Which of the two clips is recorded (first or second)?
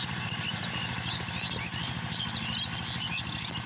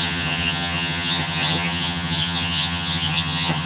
first